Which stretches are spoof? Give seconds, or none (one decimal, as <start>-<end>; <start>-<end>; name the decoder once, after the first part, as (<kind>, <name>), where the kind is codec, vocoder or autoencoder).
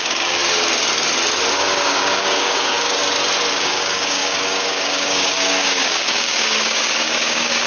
0.0-0.4 (codec, DAC); 1.5-3.0; 3.5-7.7